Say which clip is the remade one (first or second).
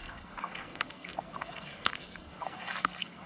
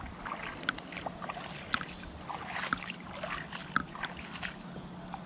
first